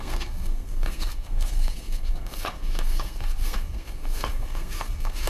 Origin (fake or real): fake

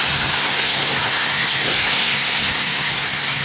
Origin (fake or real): fake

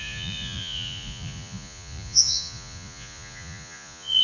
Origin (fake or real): fake